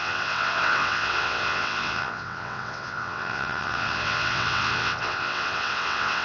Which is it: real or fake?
fake